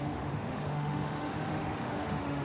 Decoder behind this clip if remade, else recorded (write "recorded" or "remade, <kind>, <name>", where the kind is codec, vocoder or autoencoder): remade, autoencoder, DAC-VAE